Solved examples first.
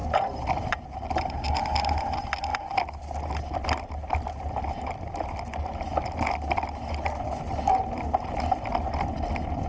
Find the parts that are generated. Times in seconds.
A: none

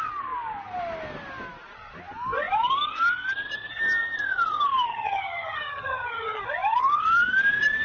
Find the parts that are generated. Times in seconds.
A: 4.9-6.4 (vocoder, HiFi-GAN)

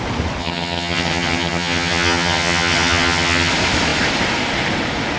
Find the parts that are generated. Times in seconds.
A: 0.4-3.5 (vocoder, HiFi-GAN)

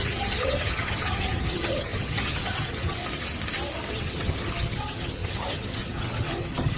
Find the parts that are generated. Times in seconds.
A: 0.0-3.0 (vocoder, HiFi-GAN); 3.9-6.8

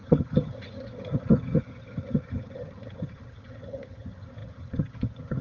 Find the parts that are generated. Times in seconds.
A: 0.0-5.4 (vocoder, HiFi-GAN)

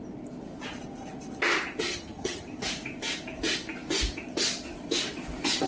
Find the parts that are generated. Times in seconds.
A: 1.9-2.6 (vocoder, HiFi-GAN)